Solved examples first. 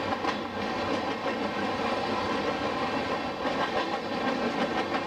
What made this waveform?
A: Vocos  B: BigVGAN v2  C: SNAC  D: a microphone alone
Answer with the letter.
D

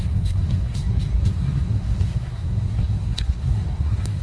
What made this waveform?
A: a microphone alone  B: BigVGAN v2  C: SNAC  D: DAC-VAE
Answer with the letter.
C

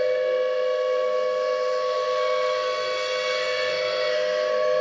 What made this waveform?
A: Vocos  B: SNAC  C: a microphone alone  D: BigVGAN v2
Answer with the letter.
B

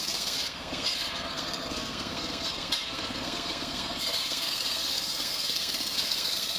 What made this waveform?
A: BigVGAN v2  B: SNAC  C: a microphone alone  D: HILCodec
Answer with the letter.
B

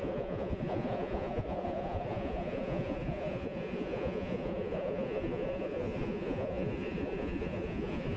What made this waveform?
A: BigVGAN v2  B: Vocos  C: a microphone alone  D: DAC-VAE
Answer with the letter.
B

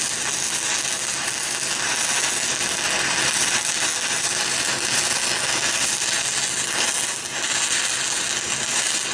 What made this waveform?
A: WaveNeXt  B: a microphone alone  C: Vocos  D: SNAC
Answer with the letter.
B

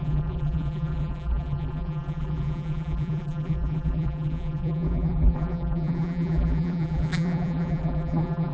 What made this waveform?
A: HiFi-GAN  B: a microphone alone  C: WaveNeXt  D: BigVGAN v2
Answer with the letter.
D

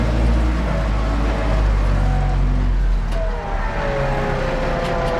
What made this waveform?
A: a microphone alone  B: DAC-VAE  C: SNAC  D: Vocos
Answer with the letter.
A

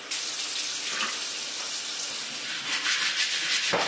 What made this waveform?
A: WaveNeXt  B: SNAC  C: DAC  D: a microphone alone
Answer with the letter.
D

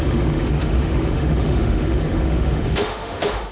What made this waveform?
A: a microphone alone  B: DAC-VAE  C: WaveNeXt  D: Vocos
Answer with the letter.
B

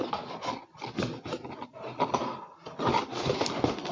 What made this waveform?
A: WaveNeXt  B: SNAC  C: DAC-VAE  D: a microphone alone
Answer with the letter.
D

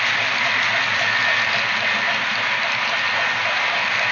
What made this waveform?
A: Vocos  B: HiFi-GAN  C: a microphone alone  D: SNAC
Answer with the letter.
C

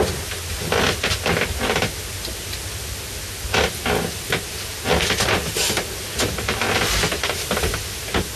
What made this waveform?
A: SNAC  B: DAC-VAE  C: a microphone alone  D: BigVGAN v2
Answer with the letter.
C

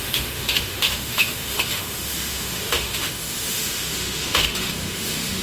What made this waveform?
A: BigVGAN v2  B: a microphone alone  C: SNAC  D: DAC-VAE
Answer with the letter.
D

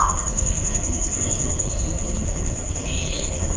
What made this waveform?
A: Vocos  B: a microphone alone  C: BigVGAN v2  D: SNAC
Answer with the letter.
D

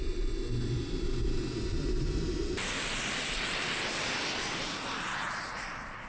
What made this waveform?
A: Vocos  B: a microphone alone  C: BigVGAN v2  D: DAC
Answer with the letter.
B